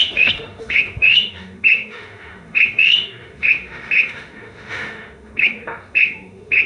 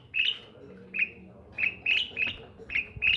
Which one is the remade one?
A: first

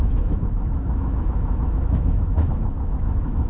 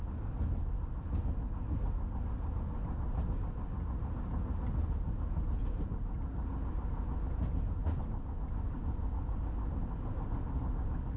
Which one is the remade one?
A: first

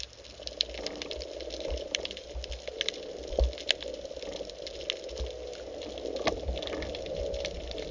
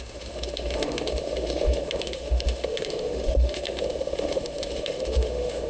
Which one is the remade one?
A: second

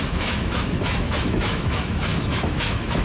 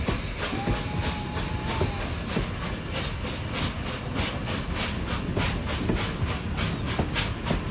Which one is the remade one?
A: first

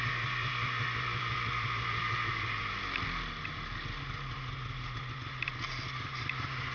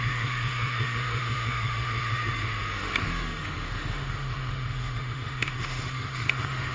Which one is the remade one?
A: second